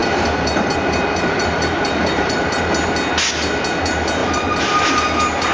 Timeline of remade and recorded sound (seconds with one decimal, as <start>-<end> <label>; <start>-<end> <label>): 0.0-2.6 remade; 2.6-4.2 recorded; 4.2-4.8 remade; 4.8-5.5 recorded